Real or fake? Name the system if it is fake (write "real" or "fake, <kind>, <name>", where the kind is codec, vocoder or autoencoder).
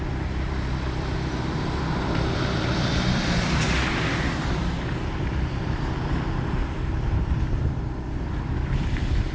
fake, vocoder, BigVGAN v2